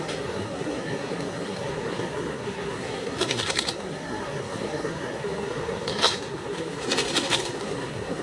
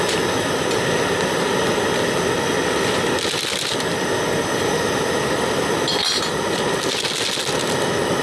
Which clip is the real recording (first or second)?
second